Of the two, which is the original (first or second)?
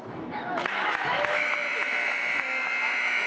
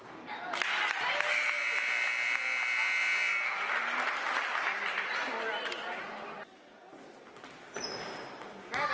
second